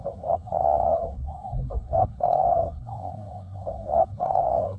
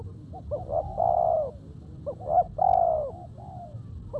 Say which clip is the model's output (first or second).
first